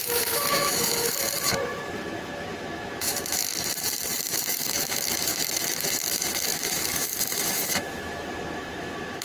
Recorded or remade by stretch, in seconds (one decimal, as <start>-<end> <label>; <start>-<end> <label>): 0.0-3.5 remade; 3.5-4.2 recorded; 4.2-9.2 remade